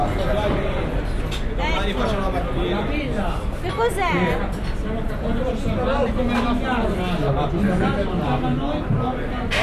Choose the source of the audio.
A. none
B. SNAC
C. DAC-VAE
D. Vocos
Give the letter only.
A